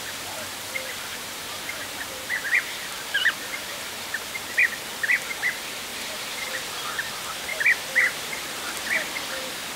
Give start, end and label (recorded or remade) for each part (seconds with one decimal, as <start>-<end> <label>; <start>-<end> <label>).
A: 0.0-1.1 recorded; 1.1-4.1 remade; 4.1-5.9 recorded; 5.9-6.5 remade; 6.5-9.8 recorded